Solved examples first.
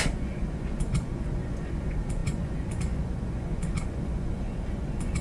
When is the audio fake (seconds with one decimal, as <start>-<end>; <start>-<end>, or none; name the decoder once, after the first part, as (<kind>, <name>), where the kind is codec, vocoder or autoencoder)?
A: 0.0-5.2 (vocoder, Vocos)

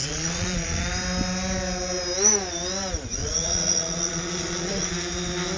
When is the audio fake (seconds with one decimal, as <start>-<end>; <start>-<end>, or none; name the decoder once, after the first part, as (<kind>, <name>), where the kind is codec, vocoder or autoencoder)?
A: 0.0-0.8 (vocoder, Vocos); 3.2-4.9

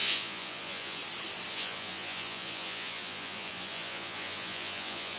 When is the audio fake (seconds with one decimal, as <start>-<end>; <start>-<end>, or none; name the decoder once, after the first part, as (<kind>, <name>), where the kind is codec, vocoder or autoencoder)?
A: 0.0-1.0 (vocoder, Vocos); 1.5-5.2

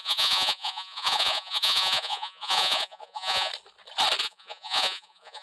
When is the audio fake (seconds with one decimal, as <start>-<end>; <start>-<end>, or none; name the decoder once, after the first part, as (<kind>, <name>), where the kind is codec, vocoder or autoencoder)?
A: 0.0-3.5 (vocoder, Vocos); 4.2-5.4

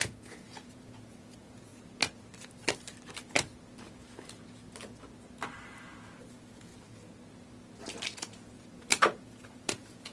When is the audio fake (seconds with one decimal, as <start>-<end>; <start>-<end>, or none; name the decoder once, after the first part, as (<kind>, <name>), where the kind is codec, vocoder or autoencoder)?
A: 0.0-1.7 (vocoder, Vocos); 6.3-6.7; 8.8-10.1

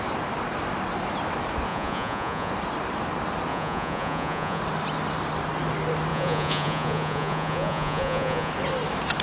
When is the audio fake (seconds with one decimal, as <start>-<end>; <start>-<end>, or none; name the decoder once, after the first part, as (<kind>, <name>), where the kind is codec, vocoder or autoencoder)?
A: 1.7-2.5 (vocoder, Vocos); 3.5-4.6; 6.1-8.5

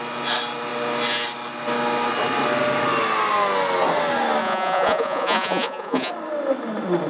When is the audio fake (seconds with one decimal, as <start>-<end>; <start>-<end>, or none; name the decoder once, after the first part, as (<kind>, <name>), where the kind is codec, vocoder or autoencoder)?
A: 4.4-6.1 (vocoder, Vocos)